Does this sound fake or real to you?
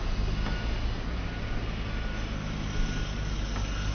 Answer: real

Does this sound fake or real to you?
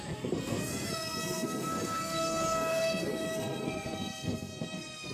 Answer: fake